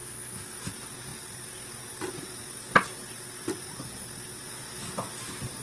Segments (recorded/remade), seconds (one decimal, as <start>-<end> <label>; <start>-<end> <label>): 0.0-0.7 remade; 0.7-5.6 recorded